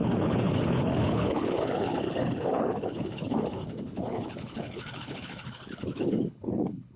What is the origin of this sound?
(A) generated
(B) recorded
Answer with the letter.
A